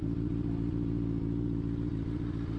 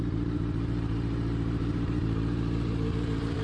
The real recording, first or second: first